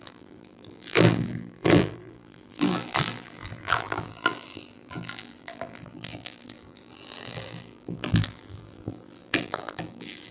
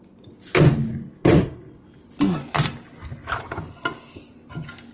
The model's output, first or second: first